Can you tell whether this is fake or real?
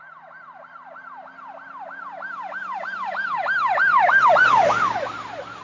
real